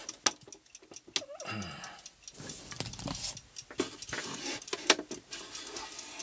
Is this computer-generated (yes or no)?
no